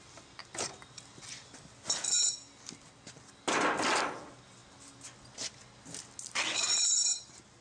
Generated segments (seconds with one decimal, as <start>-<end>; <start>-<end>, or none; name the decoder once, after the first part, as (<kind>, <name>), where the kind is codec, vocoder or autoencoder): none